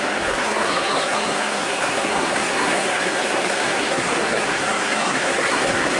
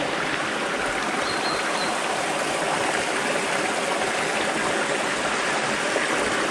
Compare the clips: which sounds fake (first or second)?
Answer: first